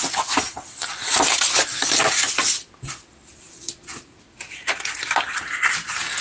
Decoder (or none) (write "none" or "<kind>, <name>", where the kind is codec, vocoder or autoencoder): none